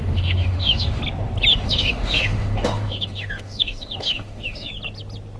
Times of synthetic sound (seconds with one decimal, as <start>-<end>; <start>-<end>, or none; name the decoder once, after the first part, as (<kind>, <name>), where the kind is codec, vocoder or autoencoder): 0.0-1.0 (autoencoder, DAC-VAE); 1.5-4.7